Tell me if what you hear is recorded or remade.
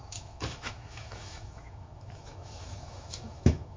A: remade